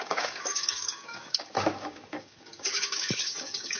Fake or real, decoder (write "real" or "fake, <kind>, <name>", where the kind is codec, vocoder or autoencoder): fake, codec, DAC